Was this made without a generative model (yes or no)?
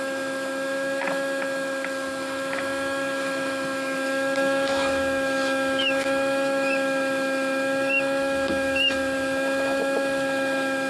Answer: no